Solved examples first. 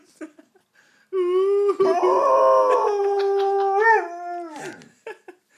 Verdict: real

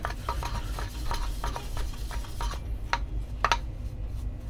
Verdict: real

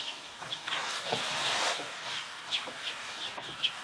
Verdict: fake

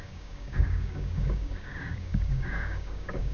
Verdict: fake